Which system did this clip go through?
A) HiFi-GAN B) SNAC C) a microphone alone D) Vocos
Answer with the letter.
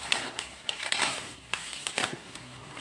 B